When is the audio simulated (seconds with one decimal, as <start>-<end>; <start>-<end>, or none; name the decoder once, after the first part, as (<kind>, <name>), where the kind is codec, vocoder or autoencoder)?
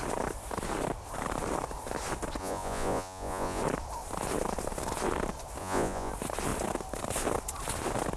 2.4-3.6 (vocoder, Vocos); 5.6-6.1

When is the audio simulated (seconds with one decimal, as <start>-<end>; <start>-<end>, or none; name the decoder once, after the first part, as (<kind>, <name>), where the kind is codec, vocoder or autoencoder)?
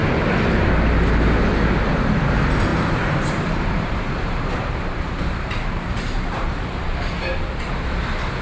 0.0-0.7 (vocoder, BigVGAN v2); 2.7-7.7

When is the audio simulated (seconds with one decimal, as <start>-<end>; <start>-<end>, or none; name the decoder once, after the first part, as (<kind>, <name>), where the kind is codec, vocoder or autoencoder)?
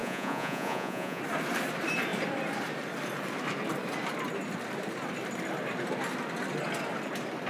0.0-1.2 (vocoder, Vocos)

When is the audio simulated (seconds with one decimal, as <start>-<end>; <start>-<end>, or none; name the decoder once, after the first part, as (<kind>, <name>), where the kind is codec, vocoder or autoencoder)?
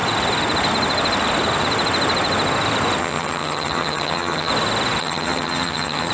3.0-4.5 (vocoder, HiFi-GAN); 5.0-6.1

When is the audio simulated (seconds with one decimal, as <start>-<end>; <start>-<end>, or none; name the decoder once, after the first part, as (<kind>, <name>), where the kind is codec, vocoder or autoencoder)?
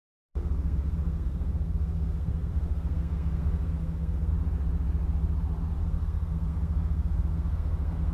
0.0-4.3 (codec, SNAC); 5.8-8.1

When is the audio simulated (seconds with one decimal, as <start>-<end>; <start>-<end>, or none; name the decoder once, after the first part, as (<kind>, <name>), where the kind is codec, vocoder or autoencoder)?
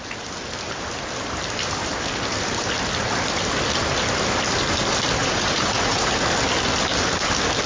5.2-6.1 (vocoder, Vocos)